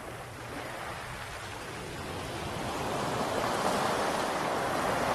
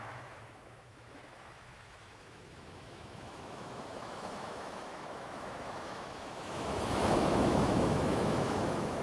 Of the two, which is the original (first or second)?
first